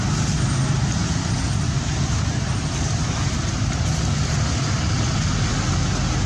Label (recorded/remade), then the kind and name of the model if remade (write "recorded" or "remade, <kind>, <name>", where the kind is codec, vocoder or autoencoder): recorded